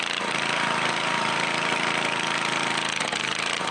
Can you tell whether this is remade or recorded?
remade